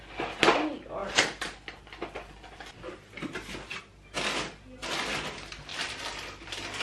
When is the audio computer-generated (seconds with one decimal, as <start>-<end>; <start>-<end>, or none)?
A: none